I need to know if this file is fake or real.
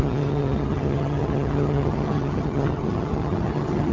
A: fake